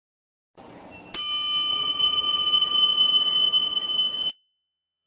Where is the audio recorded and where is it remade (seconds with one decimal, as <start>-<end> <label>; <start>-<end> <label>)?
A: 0.0-1.7 recorded; 1.7-5.1 remade